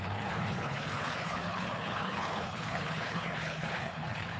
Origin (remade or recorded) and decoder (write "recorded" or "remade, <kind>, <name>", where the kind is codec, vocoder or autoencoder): remade, codec, HILCodec